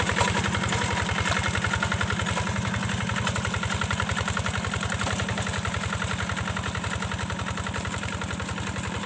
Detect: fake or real real